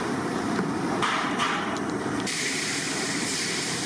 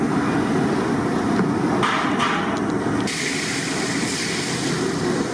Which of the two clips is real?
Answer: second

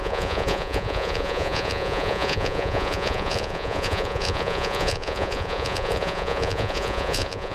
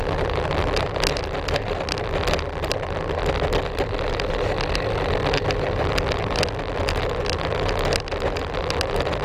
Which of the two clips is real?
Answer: second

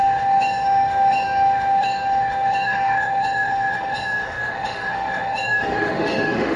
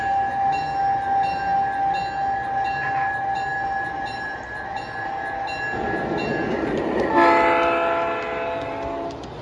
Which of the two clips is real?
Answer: second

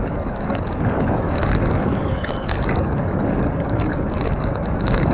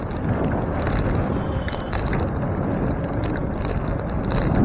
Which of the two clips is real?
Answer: second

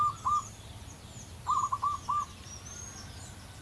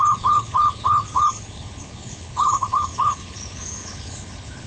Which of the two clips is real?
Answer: first